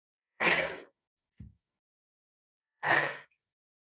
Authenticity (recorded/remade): remade